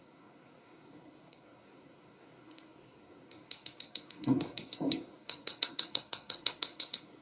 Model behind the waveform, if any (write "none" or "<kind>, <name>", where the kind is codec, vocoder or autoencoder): codec, SNAC